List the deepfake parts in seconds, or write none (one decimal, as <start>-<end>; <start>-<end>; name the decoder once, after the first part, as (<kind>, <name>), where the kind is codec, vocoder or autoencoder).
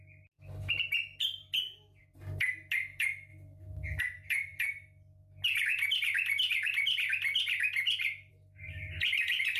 5.7-8.3 (vocoder, BigVGAN v2)